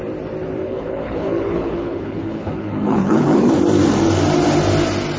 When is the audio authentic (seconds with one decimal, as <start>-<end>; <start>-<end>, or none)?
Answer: 0.0-0.6; 3.5-5.2